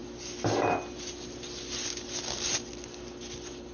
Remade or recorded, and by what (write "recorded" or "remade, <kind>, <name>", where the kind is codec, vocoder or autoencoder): recorded